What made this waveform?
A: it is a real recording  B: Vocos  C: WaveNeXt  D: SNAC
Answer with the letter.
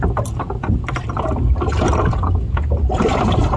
A